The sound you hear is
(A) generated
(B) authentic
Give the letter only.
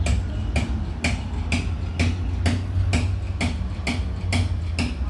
B